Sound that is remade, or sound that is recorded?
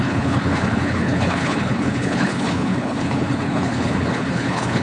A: remade